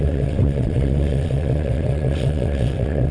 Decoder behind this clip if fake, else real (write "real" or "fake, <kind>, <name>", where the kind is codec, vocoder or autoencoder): fake, vocoder, WaveNeXt